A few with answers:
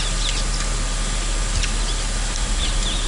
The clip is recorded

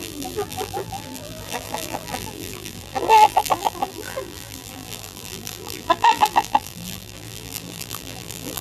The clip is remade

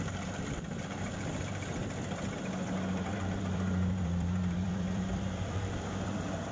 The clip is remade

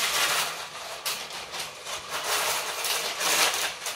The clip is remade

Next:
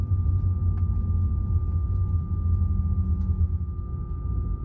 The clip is recorded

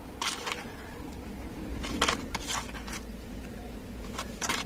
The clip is recorded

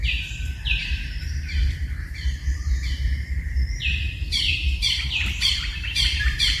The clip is remade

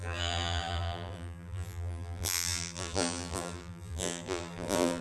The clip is remade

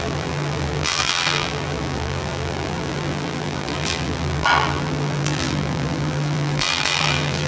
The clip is remade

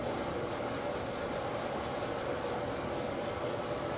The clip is recorded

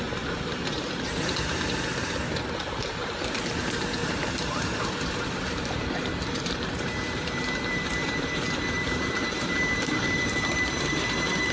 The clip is remade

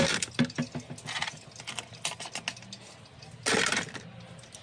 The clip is recorded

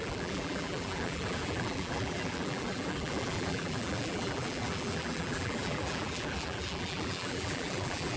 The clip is remade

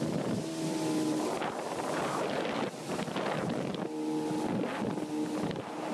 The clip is recorded